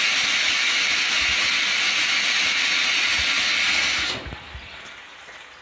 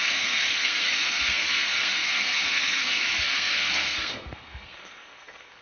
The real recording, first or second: first